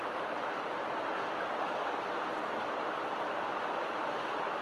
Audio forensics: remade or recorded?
recorded